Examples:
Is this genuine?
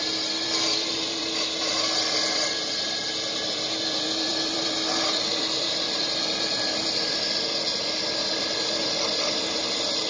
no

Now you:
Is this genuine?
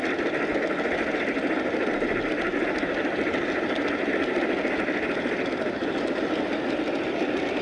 yes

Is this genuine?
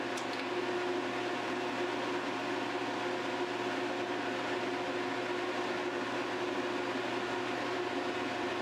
yes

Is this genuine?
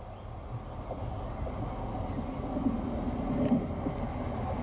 yes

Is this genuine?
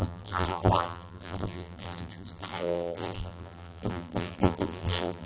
no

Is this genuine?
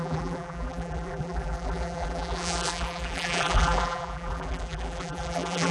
no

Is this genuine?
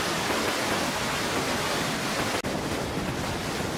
yes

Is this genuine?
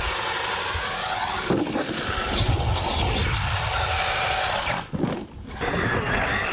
yes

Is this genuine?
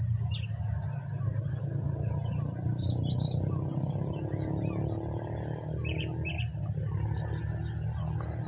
yes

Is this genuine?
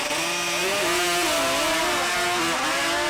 yes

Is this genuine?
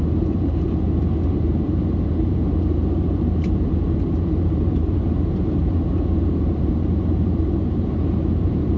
no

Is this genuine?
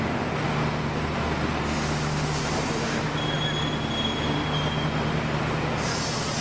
yes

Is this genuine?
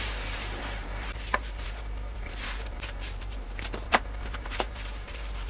no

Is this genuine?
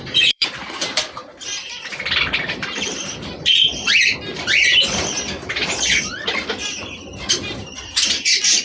no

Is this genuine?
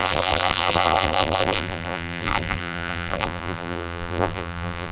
no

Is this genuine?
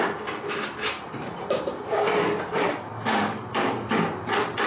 no